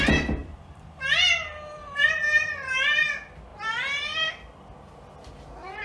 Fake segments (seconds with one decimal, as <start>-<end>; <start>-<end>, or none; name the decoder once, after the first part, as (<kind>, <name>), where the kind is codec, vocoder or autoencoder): 0.4-2.5 (vocoder, BigVGAN v2); 3.5-4.3